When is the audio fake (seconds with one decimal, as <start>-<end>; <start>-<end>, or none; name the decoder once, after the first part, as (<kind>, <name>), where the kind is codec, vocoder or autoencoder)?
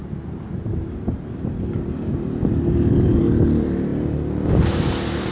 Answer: none